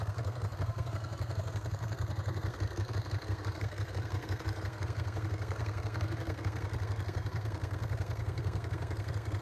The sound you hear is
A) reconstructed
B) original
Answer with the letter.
A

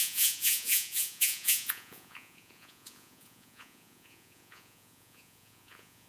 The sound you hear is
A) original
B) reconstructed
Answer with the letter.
B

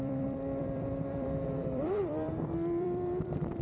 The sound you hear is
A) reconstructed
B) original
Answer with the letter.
A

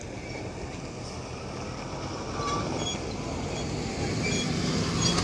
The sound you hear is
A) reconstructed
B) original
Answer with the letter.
B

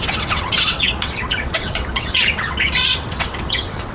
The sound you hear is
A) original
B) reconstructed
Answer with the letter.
B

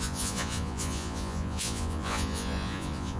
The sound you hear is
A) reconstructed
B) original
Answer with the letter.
A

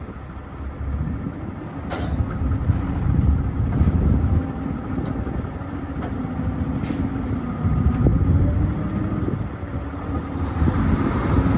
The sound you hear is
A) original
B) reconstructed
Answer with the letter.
A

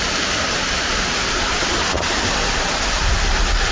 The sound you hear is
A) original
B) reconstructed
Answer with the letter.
A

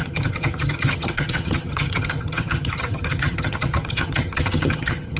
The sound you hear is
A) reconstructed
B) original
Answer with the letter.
A